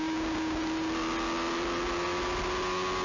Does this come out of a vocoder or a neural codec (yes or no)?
no